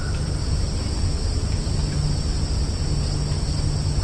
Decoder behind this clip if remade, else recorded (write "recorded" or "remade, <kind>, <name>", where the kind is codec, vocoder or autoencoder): recorded